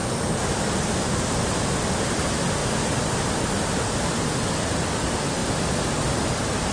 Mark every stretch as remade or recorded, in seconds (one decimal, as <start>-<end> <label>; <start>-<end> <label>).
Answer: 0.0-5.4 recorded; 5.4-6.2 remade; 6.2-6.7 recorded